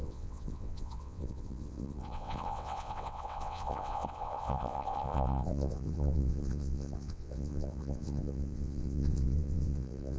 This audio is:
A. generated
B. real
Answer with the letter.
A